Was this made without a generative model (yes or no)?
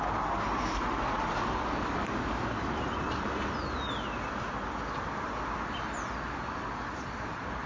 yes